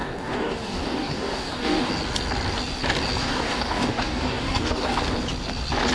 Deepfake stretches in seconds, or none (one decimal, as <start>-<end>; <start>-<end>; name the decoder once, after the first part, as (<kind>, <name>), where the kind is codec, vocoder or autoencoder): 0.0-1.9 (codec, DAC); 3.2-5.0